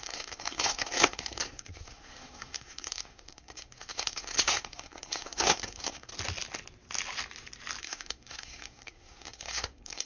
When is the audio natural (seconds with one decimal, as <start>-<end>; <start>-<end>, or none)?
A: 6.1-7.8